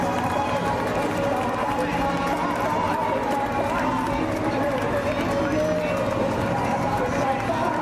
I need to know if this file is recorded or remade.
recorded